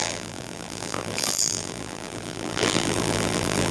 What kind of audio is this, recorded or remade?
remade